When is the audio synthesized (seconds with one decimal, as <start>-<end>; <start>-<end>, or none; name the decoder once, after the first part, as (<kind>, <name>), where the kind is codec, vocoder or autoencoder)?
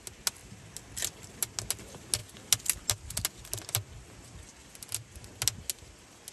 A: none